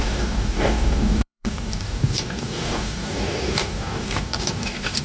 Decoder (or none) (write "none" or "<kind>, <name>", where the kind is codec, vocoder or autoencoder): codec, DAC